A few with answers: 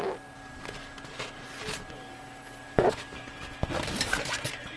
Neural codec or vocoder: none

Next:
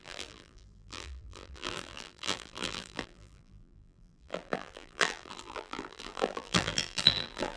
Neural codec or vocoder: vocoder, BigVGAN v2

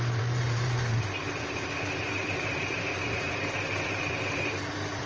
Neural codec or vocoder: vocoder, BigVGAN v2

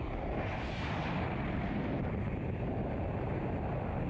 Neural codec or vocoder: none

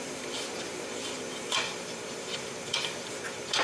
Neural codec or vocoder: vocoder, BigVGAN v2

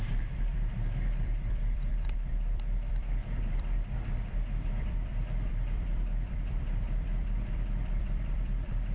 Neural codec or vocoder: vocoder, BigVGAN v2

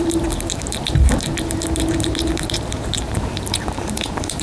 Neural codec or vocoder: vocoder, BigVGAN v2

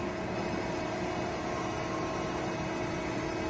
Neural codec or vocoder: vocoder, BigVGAN v2